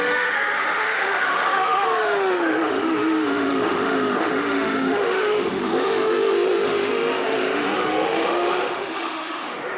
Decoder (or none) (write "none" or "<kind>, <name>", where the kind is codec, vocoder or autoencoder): autoencoder, DAC-VAE